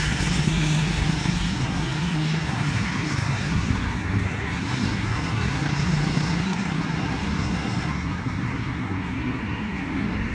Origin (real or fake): fake